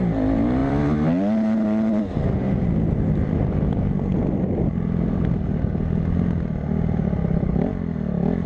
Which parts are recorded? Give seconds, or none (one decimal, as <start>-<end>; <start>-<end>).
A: 0.0-0.6; 5.3-8.5